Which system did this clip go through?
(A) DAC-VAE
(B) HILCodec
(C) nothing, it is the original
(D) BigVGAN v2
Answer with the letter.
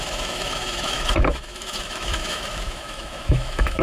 A